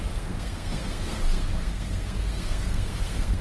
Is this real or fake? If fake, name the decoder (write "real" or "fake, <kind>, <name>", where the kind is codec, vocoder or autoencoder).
fake, codec, SNAC